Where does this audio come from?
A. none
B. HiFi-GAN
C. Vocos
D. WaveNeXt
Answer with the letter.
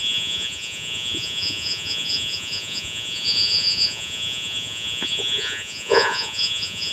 C